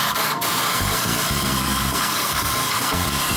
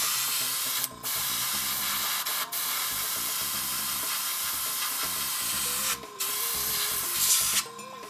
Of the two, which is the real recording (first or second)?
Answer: second